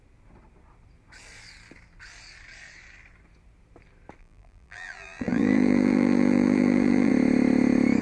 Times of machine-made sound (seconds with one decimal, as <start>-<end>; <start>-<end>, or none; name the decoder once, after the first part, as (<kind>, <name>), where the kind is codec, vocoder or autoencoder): 4.2-7.1 (vocoder, BigVGAN v2)